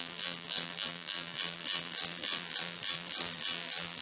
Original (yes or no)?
no